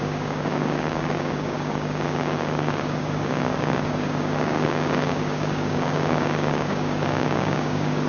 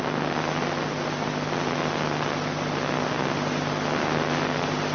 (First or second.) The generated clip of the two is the first